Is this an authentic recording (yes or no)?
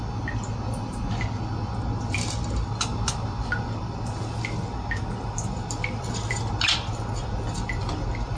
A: yes